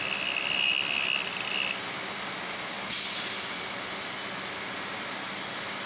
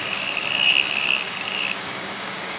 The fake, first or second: second